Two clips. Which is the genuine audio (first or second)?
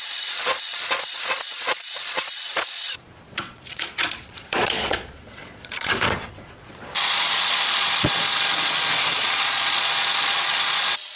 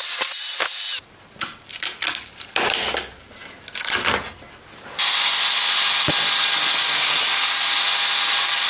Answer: second